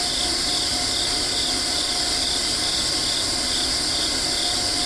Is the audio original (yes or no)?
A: yes